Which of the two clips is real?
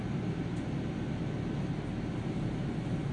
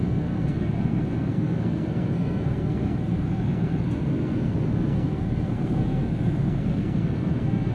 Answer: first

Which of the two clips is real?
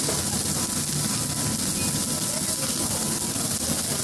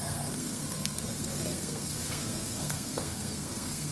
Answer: first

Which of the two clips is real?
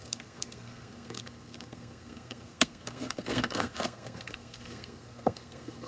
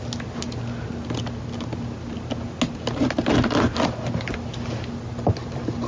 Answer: second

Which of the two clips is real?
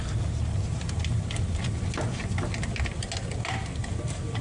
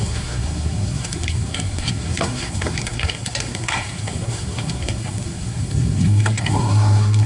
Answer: first